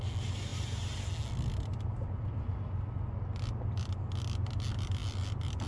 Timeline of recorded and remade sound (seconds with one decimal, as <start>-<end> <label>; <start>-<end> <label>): 0.0-5.0 recorded; 5.0-5.7 remade